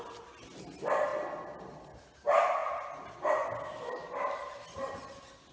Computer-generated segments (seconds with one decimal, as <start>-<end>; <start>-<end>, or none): none